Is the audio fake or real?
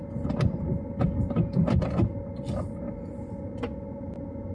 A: real